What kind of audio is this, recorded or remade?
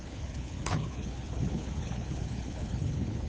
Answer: remade